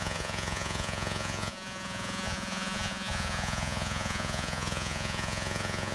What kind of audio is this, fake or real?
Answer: fake